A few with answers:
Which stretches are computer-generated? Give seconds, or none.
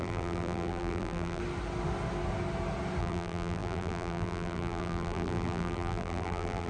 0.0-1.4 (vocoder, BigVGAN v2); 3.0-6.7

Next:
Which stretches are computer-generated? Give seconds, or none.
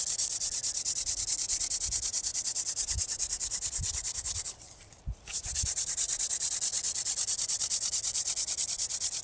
2.1-6.5 (vocoder, BigVGAN v2)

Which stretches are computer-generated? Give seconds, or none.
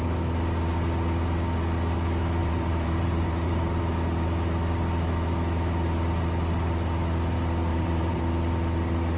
2.4-3.8 (vocoder, BigVGAN v2); 7.7-8.2